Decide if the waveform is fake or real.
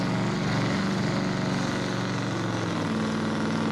real